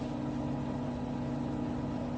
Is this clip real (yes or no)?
yes